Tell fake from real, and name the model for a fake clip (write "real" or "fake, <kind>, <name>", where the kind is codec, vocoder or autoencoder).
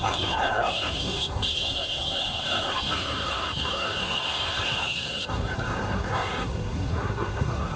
fake, codec, SNAC